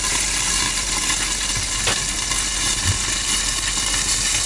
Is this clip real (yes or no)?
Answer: yes